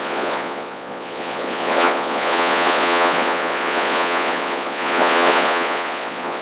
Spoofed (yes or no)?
yes